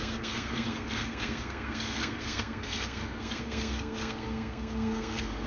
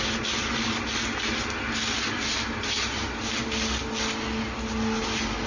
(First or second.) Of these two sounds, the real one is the second